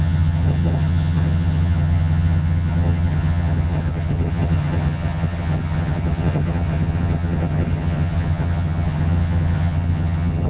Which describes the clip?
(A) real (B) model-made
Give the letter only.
B